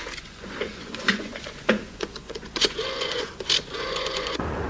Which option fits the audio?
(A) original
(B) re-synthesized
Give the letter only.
B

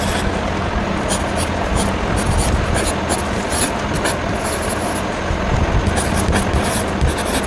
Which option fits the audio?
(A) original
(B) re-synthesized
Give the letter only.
A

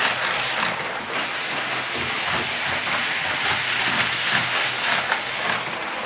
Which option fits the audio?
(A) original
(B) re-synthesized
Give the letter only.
A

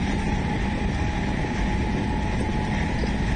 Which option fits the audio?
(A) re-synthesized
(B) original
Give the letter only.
B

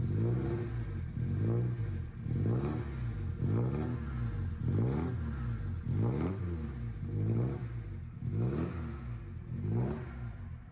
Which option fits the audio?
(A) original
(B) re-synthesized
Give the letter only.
A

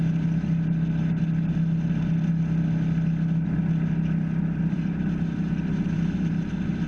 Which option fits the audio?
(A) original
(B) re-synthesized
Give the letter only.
A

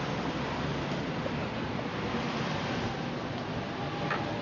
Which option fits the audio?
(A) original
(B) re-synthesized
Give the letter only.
A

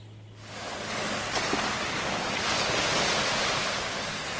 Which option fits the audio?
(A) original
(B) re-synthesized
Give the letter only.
A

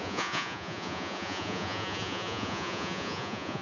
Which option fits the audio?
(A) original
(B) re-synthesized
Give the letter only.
B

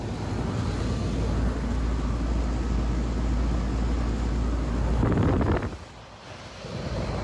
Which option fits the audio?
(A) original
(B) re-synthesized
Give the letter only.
A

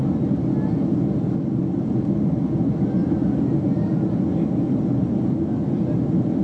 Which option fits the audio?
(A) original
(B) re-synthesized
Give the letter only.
A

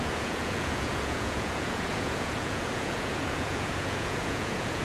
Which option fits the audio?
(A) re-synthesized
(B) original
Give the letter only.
A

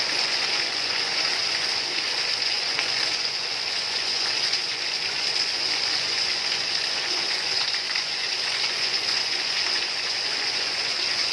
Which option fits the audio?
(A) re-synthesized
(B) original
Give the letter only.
A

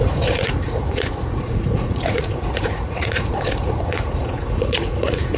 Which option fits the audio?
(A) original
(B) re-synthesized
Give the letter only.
B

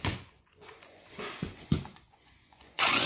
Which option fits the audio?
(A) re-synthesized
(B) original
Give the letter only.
A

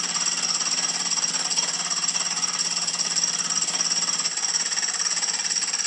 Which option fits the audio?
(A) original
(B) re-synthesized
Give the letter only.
A